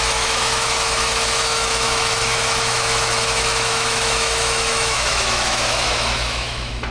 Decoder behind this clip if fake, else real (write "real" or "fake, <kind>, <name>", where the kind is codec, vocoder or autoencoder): fake, autoencoder, DAC-VAE